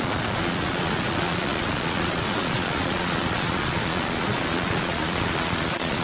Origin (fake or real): fake